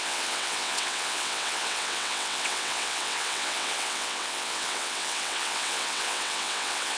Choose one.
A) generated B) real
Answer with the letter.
A